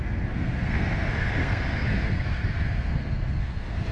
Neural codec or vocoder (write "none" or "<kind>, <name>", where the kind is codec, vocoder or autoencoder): codec, SNAC